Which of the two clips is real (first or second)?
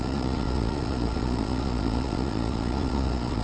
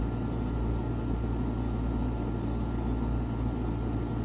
second